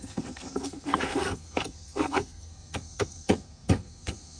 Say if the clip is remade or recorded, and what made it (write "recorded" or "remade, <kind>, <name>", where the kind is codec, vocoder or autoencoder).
remade, codec, SNAC